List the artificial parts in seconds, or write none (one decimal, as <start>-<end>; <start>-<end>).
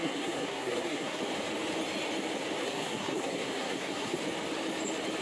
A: 0.0-1.2; 2.6-4.2